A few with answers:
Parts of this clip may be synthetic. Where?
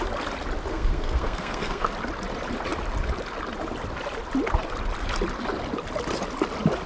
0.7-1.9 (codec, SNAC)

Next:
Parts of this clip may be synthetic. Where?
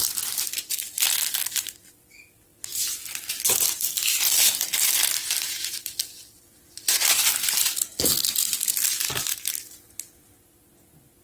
none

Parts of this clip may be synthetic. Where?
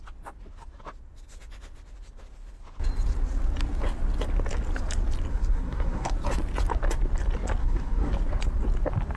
5.3-6.1 (codec, SNAC); 7.6-8.1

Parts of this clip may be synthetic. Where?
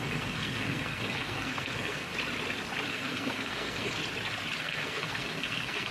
0.0-2.1 (codec, SNAC); 2.9-4.0; 4.6-5.9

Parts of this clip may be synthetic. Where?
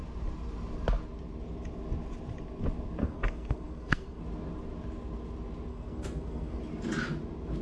3.0-4.2 (codec, SNAC); 5.7-6.6